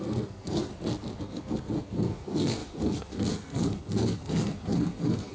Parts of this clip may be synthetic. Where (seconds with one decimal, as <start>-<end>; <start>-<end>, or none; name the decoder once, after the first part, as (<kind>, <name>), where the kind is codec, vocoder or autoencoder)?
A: 0.0-0.7 (codec, SNAC); 1.2-5.3

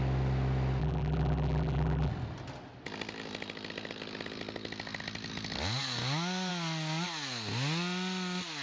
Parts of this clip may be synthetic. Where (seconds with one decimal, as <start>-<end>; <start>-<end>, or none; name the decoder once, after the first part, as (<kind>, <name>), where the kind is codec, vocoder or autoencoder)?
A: 0.8-2.1 (vocoder, BigVGAN v2)

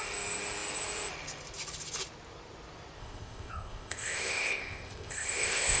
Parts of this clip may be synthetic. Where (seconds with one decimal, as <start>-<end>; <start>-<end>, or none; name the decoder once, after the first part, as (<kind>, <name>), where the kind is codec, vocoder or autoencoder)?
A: 3.0-5.8 (codec, ZipCodec)

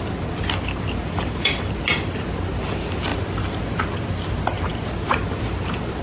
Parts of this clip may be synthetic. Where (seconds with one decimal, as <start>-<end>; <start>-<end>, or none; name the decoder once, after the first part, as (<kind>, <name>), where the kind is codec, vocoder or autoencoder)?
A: 1.0-1.8 (vocoder, BigVGAN v2); 3.1-3.8

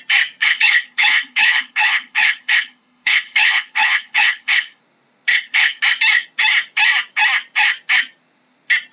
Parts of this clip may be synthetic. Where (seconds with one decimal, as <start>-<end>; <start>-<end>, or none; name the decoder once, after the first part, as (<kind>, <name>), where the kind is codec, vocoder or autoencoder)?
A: 0.4-4.8 (codec, HILCodec); 5.3-5.8